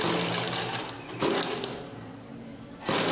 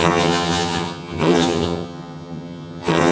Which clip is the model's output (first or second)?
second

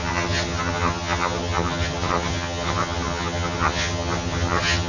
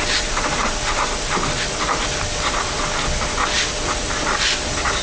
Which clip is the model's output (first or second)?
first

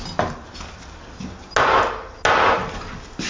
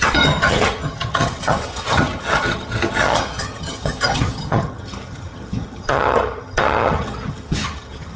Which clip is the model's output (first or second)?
second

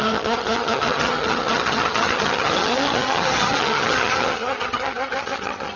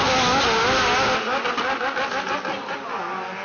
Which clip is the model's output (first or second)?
first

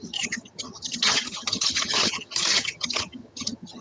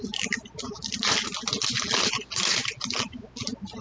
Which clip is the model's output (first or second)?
first